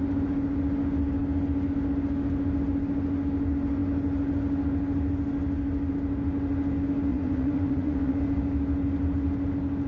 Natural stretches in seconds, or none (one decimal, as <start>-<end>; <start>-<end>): 0.0-7.1; 8.2-9.9